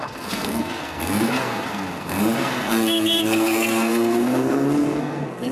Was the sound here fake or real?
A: fake